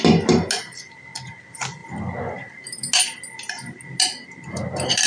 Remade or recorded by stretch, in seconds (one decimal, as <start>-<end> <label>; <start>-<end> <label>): 0.0-5.1 recorded